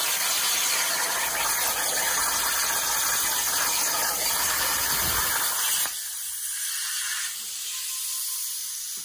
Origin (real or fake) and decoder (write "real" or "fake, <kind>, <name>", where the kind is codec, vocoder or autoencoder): real